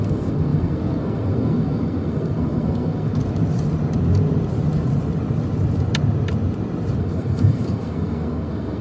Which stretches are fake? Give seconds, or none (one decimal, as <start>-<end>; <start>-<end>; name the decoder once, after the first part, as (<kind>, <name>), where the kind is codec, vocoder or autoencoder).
0.0-3.2 (codec, SNAC); 7.0-8.8